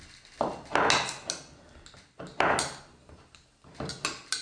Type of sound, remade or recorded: recorded